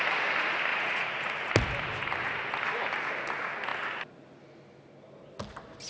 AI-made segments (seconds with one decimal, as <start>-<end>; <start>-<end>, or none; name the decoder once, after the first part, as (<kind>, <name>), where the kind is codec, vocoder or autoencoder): 0.7-1.5 (vocoder, Vocos)

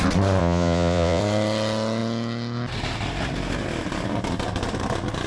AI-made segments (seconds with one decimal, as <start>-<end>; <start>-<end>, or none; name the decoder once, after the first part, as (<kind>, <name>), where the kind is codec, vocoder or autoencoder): 0.4-1.2 (vocoder, Vocos)